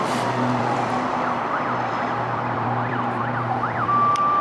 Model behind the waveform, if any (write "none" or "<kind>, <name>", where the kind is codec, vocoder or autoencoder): vocoder, BigVGAN v2